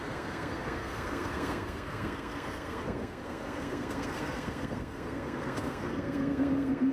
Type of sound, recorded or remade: remade